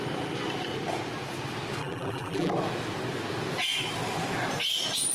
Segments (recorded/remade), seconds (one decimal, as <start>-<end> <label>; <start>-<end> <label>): 0.0-1.8 recorded; 1.8-2.5 remade; 2.5-5.1 recorded